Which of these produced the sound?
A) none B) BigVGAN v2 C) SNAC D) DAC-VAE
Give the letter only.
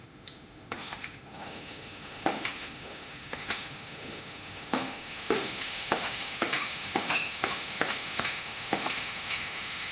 D